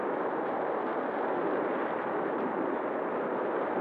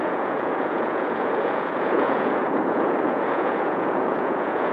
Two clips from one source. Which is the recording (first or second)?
first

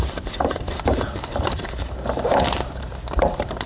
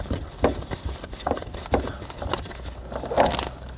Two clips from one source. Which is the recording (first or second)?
second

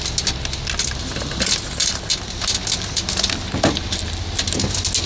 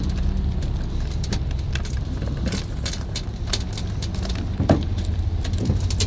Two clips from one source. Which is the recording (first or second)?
first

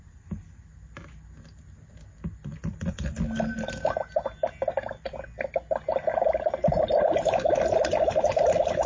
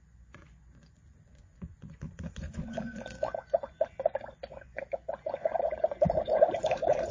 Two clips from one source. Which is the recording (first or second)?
first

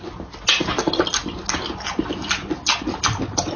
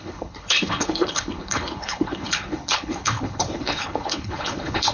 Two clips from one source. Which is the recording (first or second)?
first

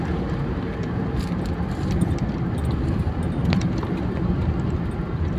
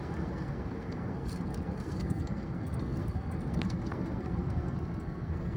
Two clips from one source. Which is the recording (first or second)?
first